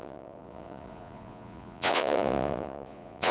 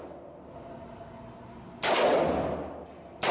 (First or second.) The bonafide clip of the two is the second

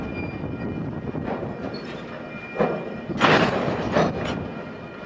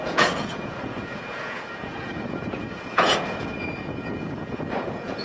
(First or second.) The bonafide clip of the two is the first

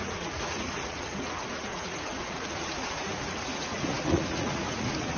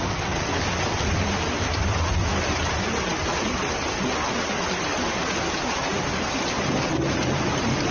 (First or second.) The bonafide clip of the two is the second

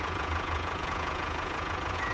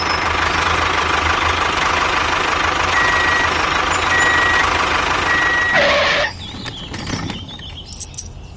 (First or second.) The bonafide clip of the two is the second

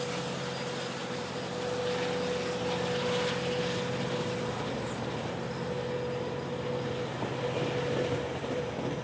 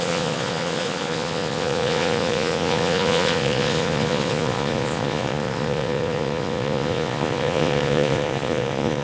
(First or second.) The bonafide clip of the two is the first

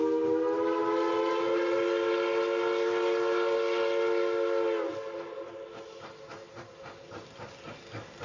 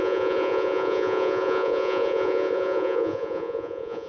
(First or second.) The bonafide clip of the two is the first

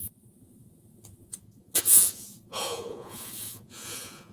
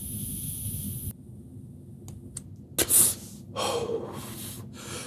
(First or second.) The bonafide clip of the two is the second